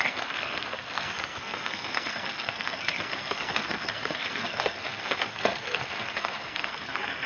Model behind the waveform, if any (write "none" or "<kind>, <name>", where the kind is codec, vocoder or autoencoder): codec, SNAC